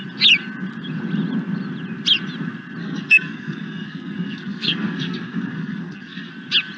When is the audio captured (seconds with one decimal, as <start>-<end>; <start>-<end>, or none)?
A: 0.0-2.8; 6.3-6.8